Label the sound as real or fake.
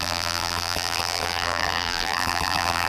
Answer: fake